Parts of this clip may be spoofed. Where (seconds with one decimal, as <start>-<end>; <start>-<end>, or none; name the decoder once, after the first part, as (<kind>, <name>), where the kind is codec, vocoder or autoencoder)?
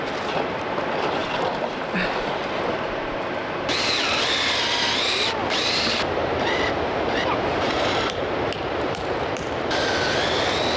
6.2-9.8 (vocoder, BigVGAN v2)